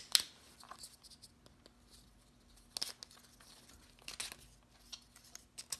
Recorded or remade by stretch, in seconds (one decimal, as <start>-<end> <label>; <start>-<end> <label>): 0.0-5.8 recorded